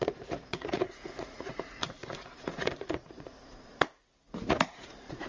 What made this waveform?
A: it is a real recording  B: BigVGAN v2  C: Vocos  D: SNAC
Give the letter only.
C